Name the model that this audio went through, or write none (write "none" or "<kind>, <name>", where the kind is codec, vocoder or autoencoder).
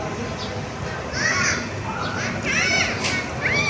none